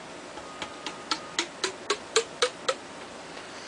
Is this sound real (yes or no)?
yes